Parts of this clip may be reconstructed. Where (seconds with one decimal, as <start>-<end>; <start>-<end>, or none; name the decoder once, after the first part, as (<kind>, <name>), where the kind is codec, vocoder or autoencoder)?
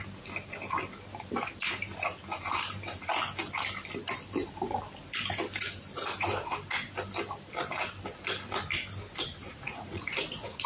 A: 9.4-10.7 (vocoder, Vocos)